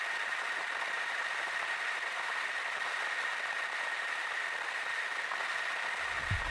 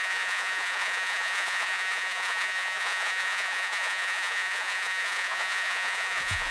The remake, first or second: second